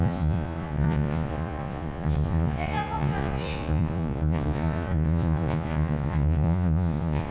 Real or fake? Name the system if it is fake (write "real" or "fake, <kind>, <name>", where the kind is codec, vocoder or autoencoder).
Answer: fake, vocoder, Vocos